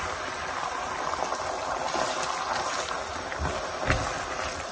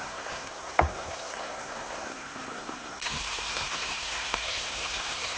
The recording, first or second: first